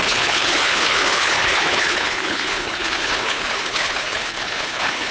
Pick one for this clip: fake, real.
fake